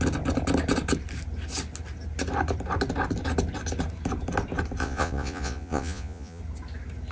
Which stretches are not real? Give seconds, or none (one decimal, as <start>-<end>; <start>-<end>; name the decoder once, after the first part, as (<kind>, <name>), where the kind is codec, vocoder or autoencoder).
4.8-6.4 (vocoder, Vocos)